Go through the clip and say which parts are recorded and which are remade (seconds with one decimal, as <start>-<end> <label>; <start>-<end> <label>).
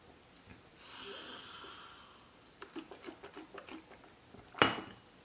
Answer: 0.0-5.2 recorded